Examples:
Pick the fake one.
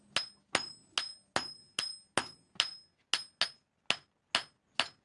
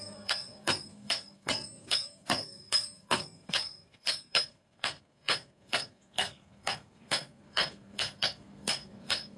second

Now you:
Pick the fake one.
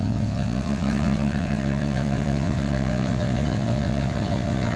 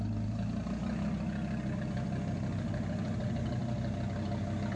first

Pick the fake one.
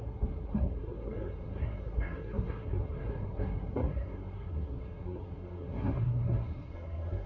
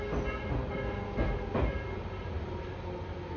first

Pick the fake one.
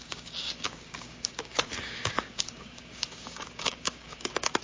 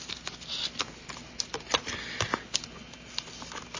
first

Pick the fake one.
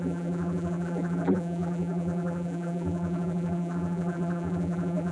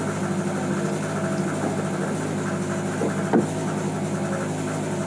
first